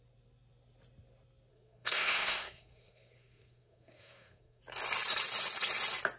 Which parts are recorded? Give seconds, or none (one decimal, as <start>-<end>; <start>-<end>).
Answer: 0.0-1.5; 4.6-6.2